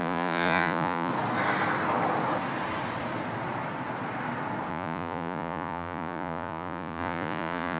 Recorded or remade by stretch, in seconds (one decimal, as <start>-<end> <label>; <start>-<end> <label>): 0.0-1.1 remade; 1.1-4.7 recorded; 4.7-7.8 remade